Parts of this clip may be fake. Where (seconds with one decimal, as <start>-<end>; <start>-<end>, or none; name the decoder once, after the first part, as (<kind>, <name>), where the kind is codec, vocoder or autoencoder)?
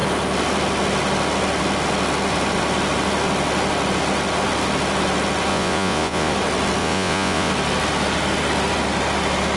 5.5-6.3 (vocoder, Vocos); 6.8-7.5